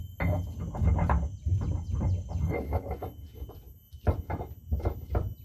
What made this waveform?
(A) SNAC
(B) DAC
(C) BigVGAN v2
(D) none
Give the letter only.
D